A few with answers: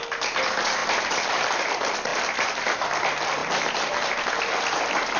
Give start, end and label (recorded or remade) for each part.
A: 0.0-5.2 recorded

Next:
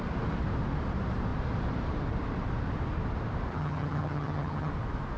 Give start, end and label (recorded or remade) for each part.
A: 0.0-3.5 recorded; 3.5-4.7 remade; 4.7-5.2 recorded

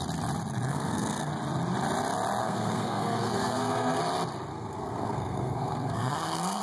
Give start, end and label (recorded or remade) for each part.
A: 0.0-0.7 recorded; 0.7-1.3 remade; 1.3-2.4 recorded; 2.4-4.0 remade; 4.0-4.5 recorded; 4.5-6.6 remade

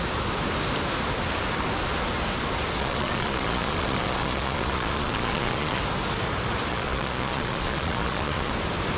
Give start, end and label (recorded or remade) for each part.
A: 0.0-2.8 recorded; 2.8-5.8 remade; 5.8-6.7 recorded; 6.7-8.5 remade; 8.5-9.0 recorded

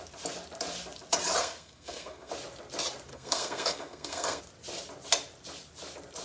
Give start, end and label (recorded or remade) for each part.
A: 0.0-1.4 recorded; 1.4-2.3 remade; 2.3-3.1 recorded; 3.1-4.4 remade; 4.4-6.2 recorded

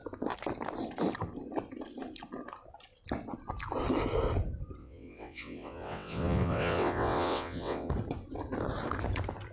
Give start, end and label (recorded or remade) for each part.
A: 0.0-4.8 recorded; 4.8-7.9 remade; 7.9-9.5 recorded

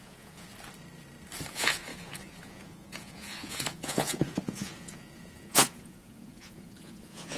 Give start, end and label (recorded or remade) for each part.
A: 0.0-0.5 remade; 0.5-1.5 recorded; 1.5-7.4 remade

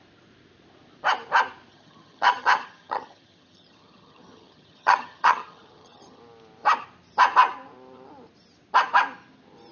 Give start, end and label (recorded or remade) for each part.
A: 0.0-1.7 recorded; 1.7-6.2 remade; 6.2-9.7 recorded